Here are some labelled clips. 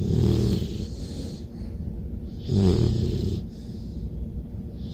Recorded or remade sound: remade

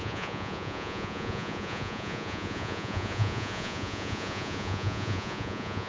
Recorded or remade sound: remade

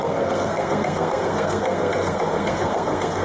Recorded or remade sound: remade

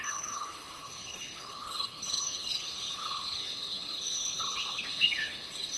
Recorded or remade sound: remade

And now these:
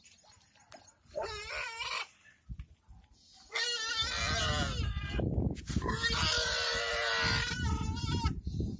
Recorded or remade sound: recorded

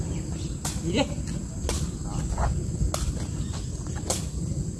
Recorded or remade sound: recorded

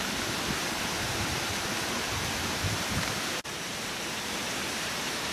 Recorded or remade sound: remade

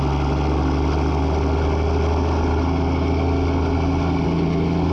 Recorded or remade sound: recorded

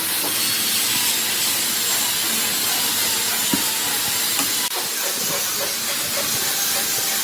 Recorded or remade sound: recorded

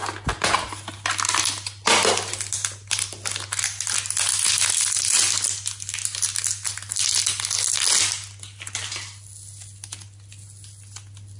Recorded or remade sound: recorded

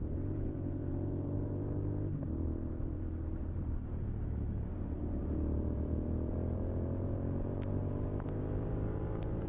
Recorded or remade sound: remade